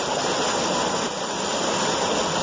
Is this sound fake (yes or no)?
no